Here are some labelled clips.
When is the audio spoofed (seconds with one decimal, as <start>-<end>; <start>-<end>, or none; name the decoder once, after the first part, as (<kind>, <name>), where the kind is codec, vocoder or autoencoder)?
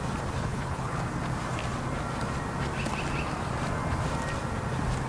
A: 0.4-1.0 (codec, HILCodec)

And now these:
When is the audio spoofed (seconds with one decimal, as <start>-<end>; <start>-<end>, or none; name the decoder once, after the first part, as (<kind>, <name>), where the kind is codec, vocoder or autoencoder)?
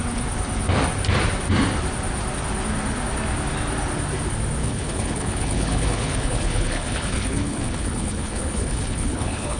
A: 4.6-9.6 (codec, HILCodec)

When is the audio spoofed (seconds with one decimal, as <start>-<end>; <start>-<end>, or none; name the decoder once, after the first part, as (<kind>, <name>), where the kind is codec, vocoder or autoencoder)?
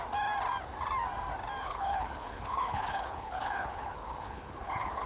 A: 1.6-5.1 (codec, HILCodec)